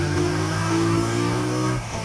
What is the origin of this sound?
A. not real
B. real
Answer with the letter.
A